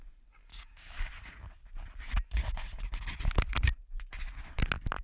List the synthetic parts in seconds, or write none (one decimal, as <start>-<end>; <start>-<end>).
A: 0.5-1.1